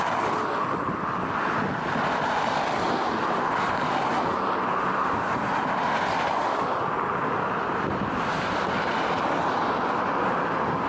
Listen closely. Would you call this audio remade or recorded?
recorded